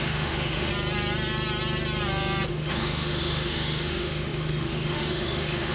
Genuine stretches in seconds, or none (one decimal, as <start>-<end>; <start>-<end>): 0.7-2.5